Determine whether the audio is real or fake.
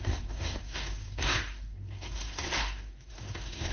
fake